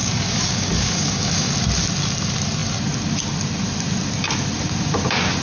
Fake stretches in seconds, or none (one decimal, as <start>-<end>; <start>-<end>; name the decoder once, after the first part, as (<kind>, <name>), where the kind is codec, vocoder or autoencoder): 0.0-1.5 (codec, DAC)